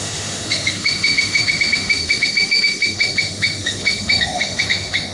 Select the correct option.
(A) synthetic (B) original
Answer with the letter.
A